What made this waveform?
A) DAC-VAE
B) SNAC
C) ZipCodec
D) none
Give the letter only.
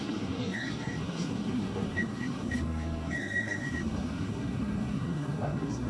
B